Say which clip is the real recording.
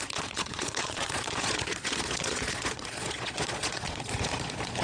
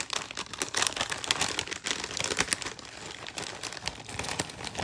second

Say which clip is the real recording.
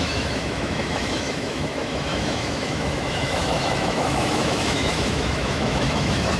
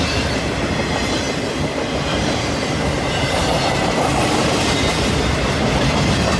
second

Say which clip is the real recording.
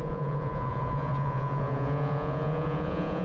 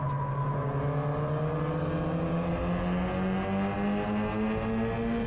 second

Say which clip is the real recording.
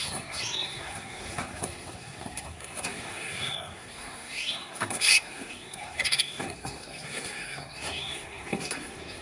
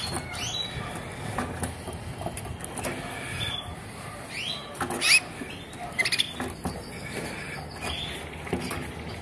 second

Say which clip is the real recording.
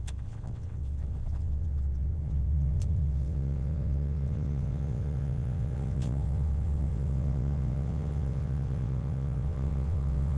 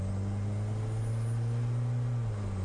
second